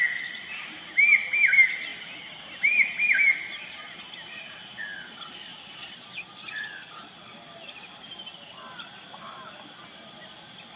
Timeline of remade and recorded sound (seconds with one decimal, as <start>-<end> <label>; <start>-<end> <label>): 0.0-10.8 recorded